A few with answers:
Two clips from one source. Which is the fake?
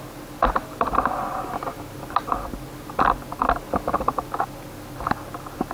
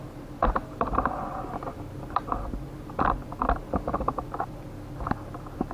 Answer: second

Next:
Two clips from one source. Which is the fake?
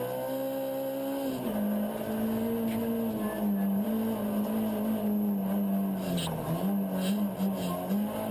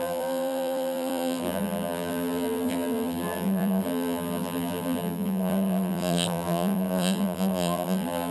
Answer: second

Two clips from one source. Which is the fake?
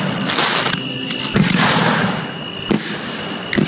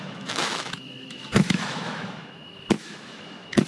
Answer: second